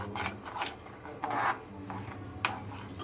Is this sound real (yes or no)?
yes